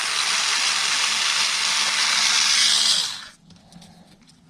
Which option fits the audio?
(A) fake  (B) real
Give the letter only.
B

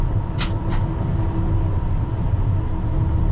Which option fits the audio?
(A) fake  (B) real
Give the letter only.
B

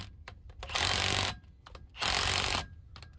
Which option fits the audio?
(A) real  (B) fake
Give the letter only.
A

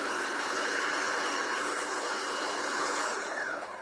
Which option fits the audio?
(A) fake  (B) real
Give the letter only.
A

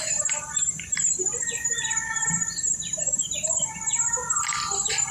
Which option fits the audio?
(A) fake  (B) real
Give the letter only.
A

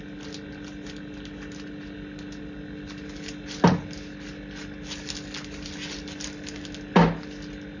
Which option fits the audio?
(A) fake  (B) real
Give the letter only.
B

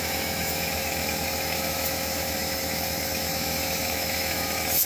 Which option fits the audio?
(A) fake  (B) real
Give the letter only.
A